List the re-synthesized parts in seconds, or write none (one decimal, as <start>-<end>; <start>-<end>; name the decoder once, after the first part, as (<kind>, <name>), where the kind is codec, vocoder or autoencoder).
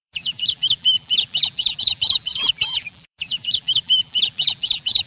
0.0-5.1 (vocoder, BigVGAN v2)